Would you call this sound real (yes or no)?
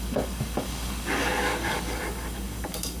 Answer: no